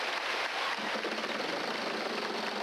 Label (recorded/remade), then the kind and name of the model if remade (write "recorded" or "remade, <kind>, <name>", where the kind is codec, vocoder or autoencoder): recorded